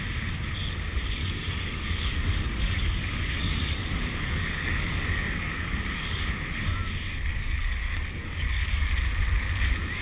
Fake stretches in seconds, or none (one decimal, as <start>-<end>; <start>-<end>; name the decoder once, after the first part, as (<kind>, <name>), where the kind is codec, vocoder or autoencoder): 1.2-6.2 (codec, DAC); 7.3-8.9